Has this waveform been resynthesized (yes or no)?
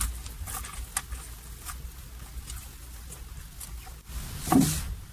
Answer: no